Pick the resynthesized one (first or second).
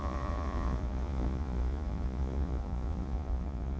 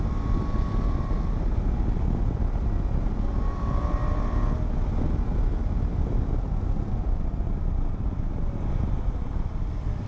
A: first